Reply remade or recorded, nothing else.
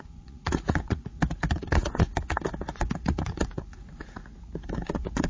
remade